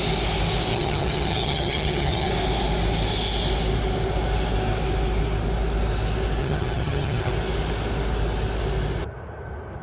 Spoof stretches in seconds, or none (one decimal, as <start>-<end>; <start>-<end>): 0.7-2.3; 6.4-7.3